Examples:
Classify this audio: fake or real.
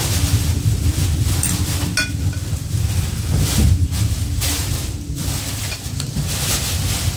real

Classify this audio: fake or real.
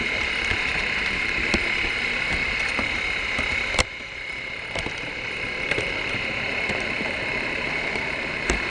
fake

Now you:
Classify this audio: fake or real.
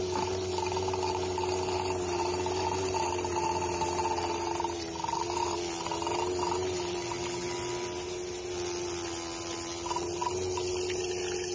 real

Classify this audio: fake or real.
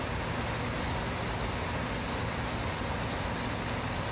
real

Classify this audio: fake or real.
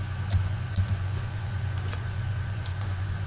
fake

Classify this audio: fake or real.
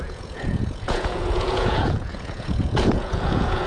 fake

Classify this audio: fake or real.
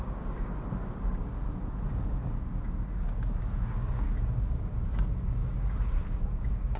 fake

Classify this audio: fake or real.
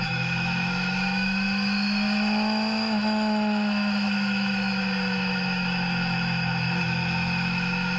fake